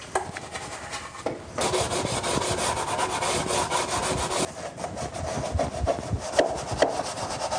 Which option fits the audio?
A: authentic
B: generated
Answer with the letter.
A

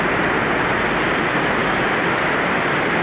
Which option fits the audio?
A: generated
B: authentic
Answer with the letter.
B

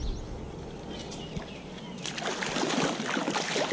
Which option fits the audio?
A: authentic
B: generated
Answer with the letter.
A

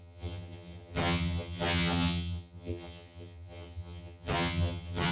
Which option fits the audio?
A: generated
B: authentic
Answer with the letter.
A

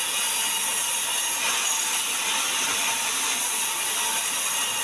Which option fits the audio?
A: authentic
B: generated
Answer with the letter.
A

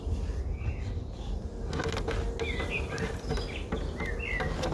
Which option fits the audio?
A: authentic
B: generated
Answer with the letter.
A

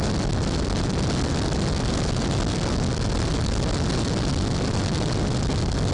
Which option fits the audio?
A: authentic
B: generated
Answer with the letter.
A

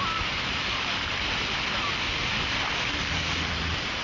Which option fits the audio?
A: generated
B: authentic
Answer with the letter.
B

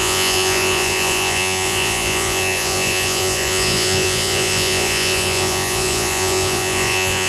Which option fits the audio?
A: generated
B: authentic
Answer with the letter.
A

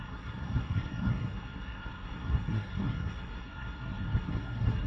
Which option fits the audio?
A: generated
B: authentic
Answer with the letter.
A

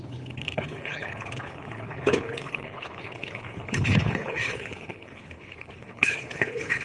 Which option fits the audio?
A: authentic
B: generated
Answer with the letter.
B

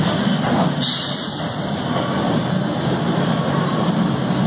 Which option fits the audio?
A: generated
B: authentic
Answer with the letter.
B